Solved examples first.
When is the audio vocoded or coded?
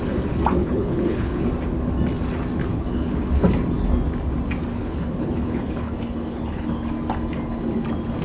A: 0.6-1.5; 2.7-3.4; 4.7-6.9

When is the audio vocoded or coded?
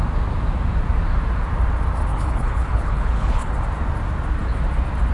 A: 2.1-3.5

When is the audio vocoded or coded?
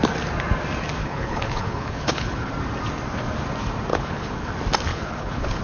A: 1.0-2.5; 3.9-4.5; 4.9-5.6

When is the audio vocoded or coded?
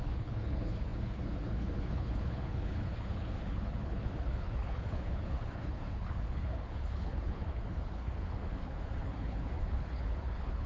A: 0.0-10.7